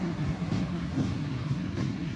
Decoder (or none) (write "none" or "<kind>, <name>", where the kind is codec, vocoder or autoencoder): codec, SNAC